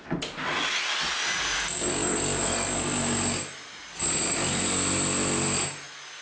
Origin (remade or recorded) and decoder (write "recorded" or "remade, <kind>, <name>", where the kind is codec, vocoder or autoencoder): recorded